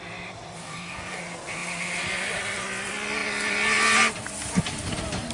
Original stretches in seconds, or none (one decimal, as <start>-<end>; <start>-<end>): 0.0-0.6; 1.2-5.3

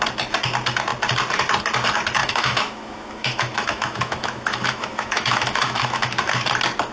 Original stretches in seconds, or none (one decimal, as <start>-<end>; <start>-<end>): 0.0-2.2; 6.3-6.9

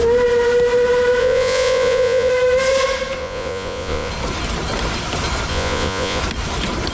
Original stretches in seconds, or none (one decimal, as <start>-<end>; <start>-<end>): 0.0-1.2; 2.3-3.2; 4.1-5.5; 6.2-6.9

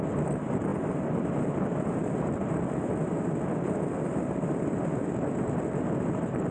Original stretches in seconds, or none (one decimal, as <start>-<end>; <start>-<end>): 0.0-6.5

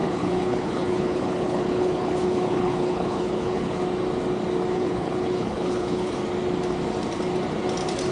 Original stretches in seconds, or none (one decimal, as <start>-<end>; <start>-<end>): 3.8-4.7; 6.2-8.1

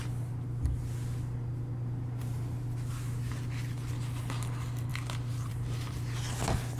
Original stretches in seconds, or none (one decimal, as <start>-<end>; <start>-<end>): 0.0-6.8